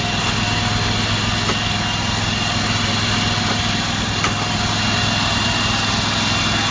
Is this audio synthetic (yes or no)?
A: no